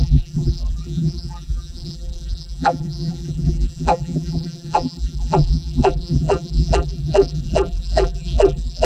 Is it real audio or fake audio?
fake